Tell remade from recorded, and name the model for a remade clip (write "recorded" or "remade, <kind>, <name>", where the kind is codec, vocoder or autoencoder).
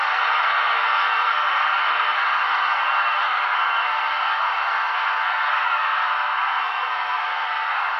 remade, codec, SNAC